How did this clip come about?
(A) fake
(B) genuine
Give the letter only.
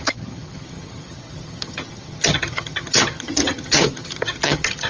A